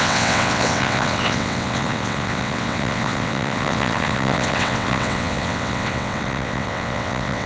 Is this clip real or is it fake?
fake